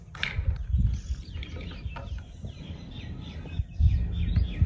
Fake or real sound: real